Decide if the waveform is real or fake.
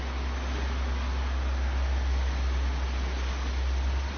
real